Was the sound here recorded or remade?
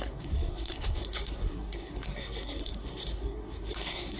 remade